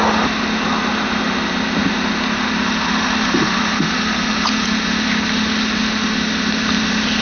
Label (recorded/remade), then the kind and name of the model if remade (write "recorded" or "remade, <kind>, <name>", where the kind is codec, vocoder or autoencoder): recorded